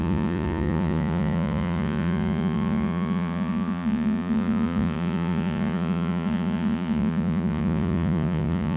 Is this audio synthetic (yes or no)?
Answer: yes